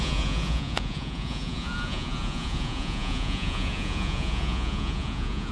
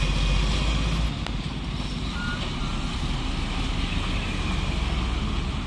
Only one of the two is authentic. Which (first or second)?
second